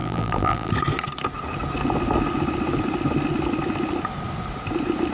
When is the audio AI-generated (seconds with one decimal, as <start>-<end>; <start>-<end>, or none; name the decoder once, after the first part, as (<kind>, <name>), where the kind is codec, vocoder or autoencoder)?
0.0-0.7 (vocoder, BigVGAN v2)